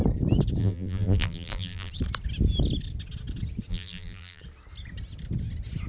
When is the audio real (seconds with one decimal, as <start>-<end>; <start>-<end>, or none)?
0.0-0.6; 1.9-3.7; 4.4-5.9